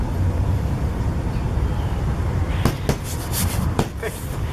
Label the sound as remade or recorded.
recorded